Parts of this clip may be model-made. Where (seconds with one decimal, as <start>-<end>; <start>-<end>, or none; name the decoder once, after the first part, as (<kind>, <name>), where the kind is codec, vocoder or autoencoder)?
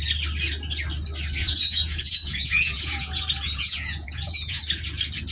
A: 1.4-4.6 (vocoder, Vocos)